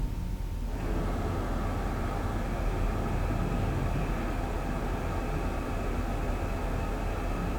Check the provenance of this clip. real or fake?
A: real